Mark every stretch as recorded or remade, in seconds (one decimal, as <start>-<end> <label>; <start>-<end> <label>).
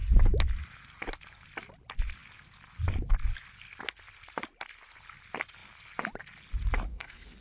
0.0-6.9 recorded; 6.9-7.4 remade